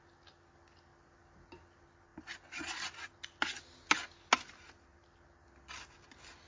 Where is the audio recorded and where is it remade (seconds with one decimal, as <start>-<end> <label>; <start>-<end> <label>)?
0.0-6.5 recorded